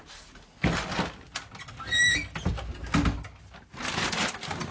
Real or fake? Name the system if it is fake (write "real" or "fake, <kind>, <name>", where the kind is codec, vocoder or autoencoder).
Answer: real